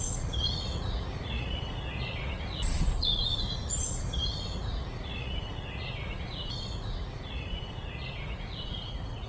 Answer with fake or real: fake